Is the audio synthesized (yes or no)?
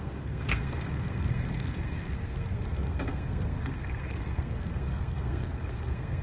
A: yes